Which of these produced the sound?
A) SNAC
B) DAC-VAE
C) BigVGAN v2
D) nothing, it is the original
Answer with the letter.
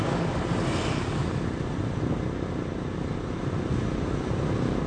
D